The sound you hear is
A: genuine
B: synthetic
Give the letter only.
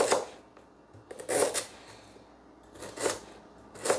A